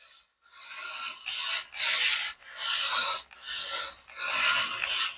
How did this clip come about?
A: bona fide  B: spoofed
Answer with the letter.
A